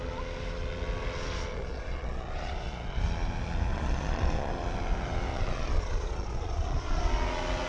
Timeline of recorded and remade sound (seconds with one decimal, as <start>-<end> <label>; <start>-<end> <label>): 0.0-1.5 recorded; 1.5-3.0 remade; 3.0-3.7 recorded; 3.7-4.5 remade; 4.5-5.3 recorded; 5.3-7.0 remade; 7.0-7.7 recorded

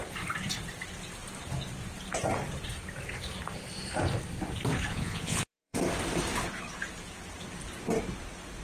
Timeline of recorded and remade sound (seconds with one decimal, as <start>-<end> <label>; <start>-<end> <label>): 0.0-4.9 recorded; 4.9-5.8 remade; 5.8-8.6 recorded

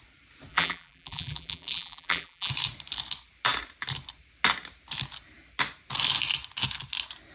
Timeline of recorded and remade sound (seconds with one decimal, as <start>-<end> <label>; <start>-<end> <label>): 0.0-0.5 recorded; 0.5-2.5 remade; 2.5-7.3 recorded

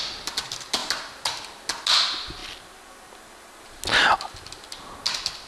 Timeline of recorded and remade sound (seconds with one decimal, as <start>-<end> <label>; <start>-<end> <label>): 0.0-5.5 recorded